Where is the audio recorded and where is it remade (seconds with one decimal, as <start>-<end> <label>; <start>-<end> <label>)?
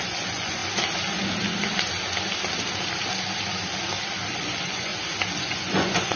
0.0-0.6 remade; 0.6-4.3 recorded; 4.3-4.9 remade; 4.9-5.4 recorded; 5.4-6.2 remade